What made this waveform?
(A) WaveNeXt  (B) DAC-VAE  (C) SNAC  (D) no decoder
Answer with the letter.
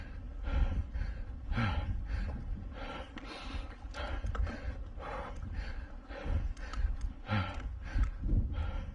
D